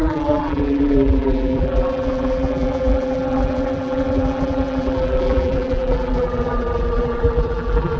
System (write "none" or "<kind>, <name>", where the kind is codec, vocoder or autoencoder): vocoder, BigVGAN v2